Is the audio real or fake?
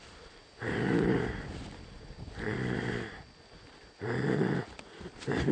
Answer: real